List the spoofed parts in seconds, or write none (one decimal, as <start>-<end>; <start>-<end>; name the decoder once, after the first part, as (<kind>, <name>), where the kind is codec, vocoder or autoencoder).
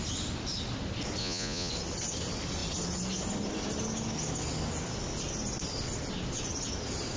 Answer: 1.2-1.7 (vocoder, Vocos)